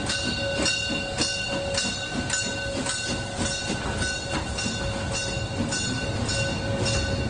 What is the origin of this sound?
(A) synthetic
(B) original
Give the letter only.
B